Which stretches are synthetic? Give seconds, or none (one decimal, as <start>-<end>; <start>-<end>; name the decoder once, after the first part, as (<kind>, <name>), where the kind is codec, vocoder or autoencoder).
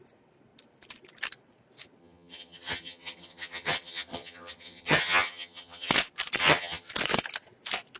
2.0-5.9 (vocoder, HiFi-GAN); 6.4-6.9